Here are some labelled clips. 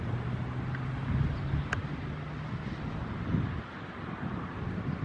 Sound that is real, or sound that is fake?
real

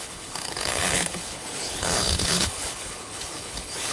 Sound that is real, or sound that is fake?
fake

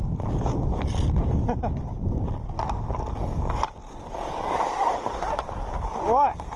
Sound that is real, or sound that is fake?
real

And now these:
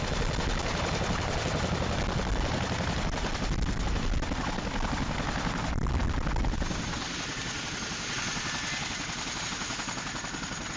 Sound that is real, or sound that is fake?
real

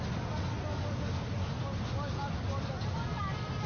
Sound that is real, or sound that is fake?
real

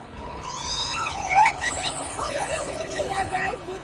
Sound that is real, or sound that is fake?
fake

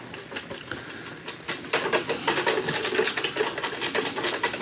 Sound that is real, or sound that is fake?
real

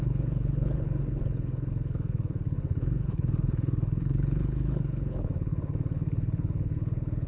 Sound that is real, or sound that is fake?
fake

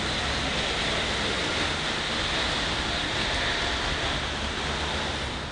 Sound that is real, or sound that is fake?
real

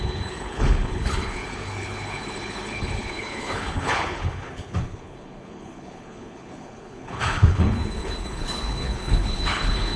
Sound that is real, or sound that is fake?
fake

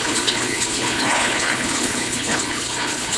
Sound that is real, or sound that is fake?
fake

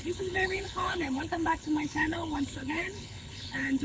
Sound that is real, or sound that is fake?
fake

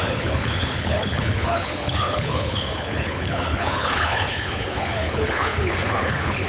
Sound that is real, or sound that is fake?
fake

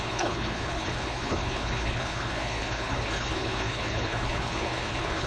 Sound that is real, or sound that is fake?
fake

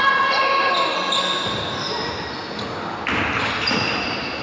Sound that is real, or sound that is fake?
real